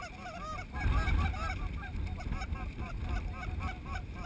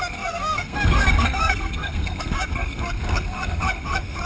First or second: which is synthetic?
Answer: second